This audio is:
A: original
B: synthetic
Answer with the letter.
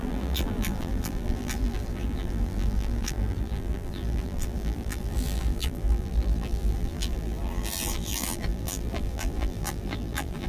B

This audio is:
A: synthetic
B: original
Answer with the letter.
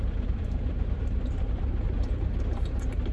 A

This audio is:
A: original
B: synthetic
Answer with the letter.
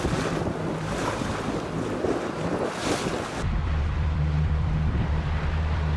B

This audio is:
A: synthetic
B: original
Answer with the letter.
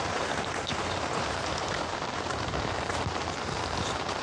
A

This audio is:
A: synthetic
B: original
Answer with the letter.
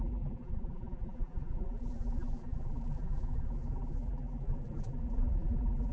A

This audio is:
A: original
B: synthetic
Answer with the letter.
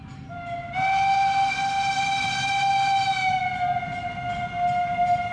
A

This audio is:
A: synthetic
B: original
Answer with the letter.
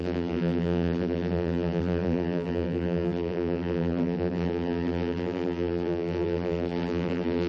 A